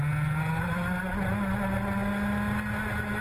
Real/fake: real